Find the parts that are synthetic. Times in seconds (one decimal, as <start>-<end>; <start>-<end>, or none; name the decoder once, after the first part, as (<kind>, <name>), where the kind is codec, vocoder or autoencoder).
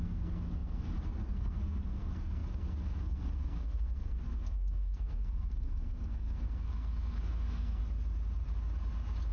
0.0-7.8 (codec, SNAC)